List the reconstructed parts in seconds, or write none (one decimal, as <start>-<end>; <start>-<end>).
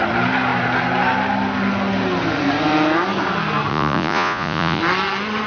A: 3.7-4.8